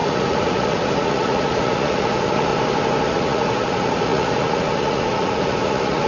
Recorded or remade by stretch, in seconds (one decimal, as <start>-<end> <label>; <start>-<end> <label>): 0.0-2.5 remade; 2.5-3.1 recorded; 3.1-6.1 remade